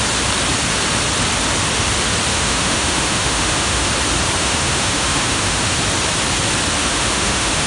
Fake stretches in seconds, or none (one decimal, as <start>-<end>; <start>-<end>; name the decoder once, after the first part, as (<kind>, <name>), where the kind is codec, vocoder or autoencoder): 2.3-3.9 (autoencoder, DAC-VAE); 4.4-5.8; 6.8-7.7